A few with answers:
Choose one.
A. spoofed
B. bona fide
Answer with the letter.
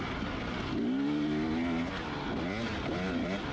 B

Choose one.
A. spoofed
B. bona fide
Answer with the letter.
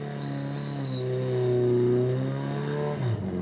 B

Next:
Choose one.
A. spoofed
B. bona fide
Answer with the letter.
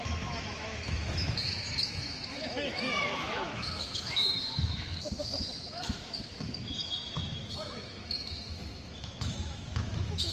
A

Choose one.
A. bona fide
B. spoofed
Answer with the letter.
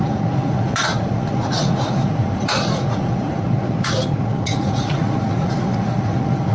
B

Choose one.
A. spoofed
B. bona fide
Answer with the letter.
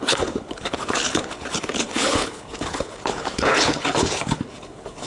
A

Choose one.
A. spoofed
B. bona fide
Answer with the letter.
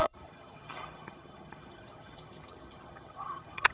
A